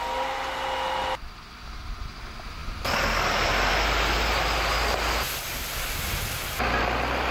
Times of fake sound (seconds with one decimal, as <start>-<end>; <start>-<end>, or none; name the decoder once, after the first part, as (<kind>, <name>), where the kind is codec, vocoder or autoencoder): 2.6-3.7 (vocoder, BigVGAN v2)